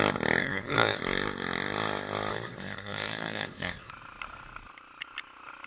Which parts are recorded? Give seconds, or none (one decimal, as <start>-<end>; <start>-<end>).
0.0-0.4; 1.0-2.3; 3.9-5.7